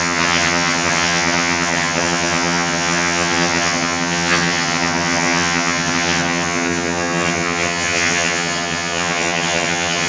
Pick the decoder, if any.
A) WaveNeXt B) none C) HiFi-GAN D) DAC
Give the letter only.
C